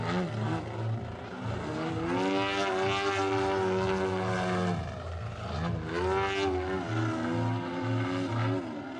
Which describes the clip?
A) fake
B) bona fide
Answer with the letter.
B